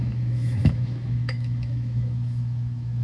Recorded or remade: remade